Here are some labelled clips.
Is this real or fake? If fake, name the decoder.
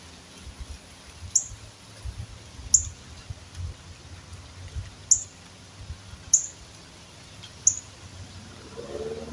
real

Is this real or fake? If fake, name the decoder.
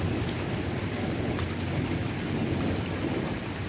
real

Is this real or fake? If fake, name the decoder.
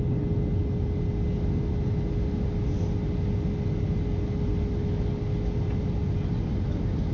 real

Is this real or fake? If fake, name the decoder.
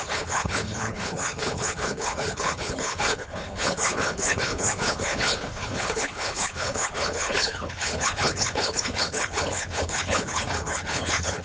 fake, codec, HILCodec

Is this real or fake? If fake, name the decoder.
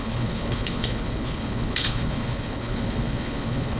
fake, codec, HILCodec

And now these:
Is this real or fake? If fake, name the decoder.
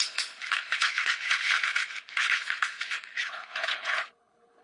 fake, codec, HILCodec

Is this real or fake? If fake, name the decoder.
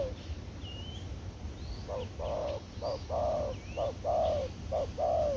real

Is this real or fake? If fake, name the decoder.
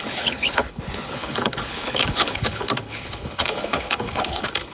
fake, codec, HILCodec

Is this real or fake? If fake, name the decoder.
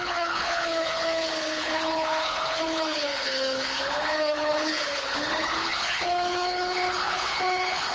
fake, codec, HILCodec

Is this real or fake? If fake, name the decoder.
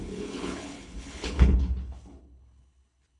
fake, codec, HILCodec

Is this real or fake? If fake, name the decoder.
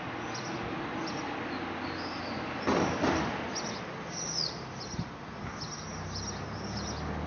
real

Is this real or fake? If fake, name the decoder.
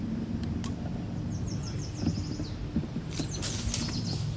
real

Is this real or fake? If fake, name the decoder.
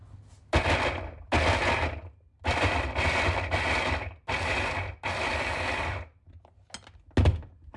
real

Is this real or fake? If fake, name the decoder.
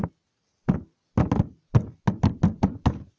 real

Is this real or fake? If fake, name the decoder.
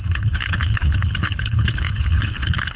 fake, codec, HILCodec